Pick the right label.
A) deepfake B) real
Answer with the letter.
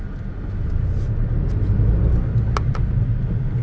B